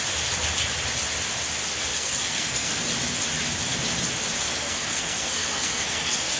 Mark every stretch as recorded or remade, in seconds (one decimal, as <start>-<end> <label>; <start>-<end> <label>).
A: 0.0-1.9 recorded; 1.9-2.8 remade; 2.8-4.4 recorded; 4.4-6.4 remade

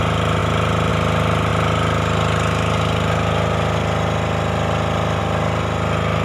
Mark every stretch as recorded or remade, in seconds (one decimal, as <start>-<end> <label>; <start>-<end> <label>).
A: 0.0-6.2 recorded